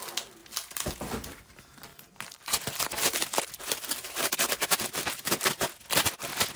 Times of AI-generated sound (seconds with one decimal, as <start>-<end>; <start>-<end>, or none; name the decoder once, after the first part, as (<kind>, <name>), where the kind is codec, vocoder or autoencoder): 0.4-0.9 (vocoder, BigVGAN v2); 1.9-5.2